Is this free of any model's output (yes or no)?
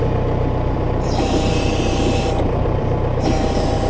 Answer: no